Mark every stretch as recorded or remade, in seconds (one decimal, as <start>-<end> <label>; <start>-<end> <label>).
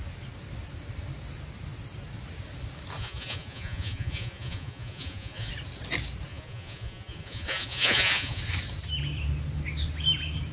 0.0-3.0 recorded; 3.0-5.5 remade; 5.5-6.3 recorded; 6.3-8.4 remade; 8.4-10.5 recorded